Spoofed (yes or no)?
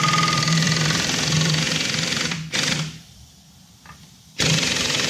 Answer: yes